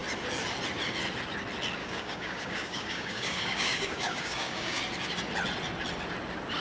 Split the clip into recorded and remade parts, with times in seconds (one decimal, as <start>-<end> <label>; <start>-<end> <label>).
0.0-1.8 recorded; 1.8-4.8 remade; 4.8-6.6 recorded